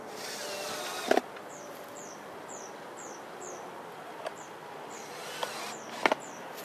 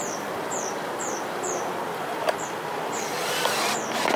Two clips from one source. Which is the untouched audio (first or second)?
first